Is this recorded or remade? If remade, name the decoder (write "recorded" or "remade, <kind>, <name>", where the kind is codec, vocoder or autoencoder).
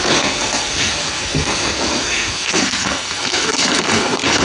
remade, codec, SNAC